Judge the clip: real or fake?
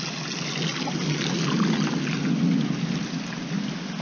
real